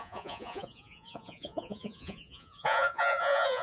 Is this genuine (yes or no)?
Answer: no